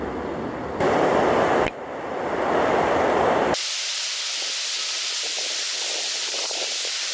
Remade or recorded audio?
recorded